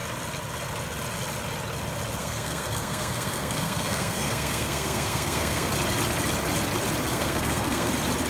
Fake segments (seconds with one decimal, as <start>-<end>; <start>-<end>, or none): 2.2-5.7; 7.1-7.9

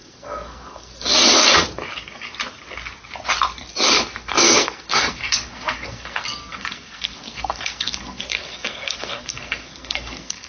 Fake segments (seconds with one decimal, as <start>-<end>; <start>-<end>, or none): 0.0-1.1; 3.9-10.5

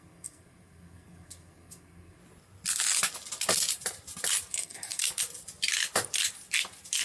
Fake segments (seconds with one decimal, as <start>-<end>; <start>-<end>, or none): 0.0-2.2; 4.5-5.0

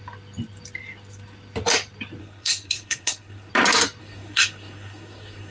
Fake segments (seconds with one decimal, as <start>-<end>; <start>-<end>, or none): 2.2-3.5; 4.0-5.5

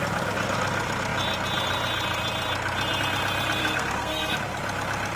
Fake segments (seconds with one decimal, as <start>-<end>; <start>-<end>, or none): 3.6-4.4